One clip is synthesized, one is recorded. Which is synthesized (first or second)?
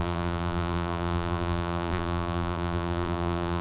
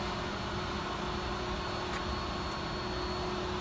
first